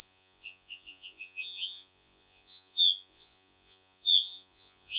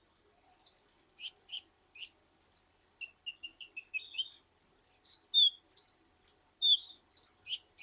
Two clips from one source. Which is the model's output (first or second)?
first